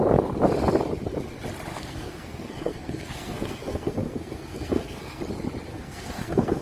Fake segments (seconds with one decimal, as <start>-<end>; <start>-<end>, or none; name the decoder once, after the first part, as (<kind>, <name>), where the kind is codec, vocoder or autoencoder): 1.7-5.2 (codec, SNAC); 5.7-6.6

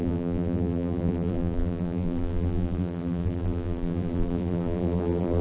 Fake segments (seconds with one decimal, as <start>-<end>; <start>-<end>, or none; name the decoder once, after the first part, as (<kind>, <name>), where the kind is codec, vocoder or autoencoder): 0.0-5.4 (vocoder, BigVGAN v2)

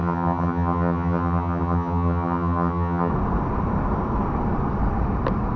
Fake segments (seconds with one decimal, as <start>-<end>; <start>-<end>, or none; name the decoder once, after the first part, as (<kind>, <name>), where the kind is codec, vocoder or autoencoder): 0.0-3.1 (vocoder, HiFi-GAN)

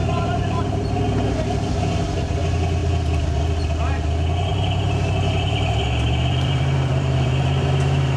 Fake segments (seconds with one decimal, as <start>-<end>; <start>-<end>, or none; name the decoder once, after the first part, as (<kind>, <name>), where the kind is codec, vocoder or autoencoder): 0.0-0.6 (vocoder, BigVGAN v2); 2.8-3.4; 4.5-8.2